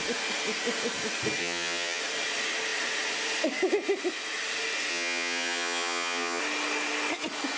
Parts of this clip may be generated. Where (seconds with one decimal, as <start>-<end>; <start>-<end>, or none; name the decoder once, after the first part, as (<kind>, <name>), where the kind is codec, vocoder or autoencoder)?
1.4-2.0 (vocoder, HiFi-GAN); 4.9-6.4